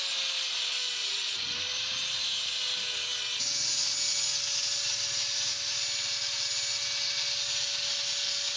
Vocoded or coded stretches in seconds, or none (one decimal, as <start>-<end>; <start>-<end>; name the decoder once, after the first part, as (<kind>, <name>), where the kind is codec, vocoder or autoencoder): 0.8-1.9 (vocoder, BigVGAN v2)